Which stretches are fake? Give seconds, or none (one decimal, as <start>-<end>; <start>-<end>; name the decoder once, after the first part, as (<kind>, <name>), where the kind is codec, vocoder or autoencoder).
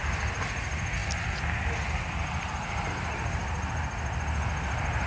none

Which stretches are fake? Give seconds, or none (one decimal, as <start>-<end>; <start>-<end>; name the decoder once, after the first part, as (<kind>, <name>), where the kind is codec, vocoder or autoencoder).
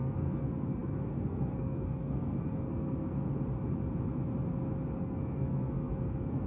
0.0-3.3 (codec, SNAC); 5.0-6.5